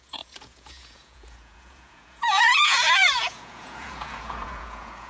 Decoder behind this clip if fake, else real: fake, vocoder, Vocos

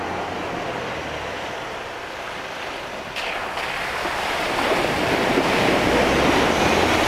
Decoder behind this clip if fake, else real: real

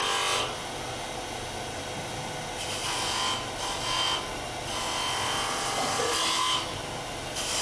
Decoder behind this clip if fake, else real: real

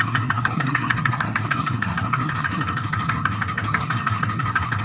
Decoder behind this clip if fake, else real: fake, codec, SNAC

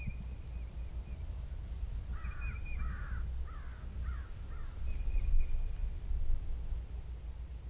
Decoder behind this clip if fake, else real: real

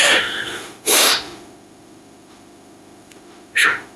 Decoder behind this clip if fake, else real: fake, autoencoder, DAC-VAE